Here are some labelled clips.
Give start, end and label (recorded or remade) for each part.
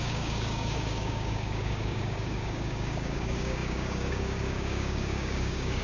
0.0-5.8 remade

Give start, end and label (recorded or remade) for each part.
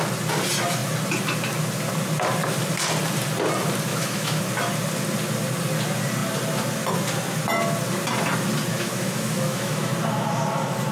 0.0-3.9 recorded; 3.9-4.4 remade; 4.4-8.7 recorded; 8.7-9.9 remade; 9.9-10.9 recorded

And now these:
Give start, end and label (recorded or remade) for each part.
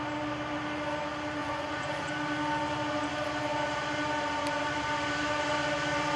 0.0-1.4 recorded; 1.4-2.1 remade; 2.1-6.2 recorded